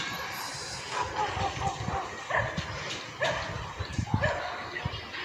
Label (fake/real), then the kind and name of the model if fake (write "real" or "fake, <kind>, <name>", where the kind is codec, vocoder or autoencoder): real